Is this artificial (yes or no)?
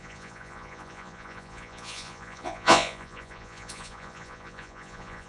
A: yes